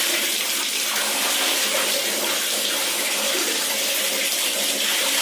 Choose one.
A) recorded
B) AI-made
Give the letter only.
A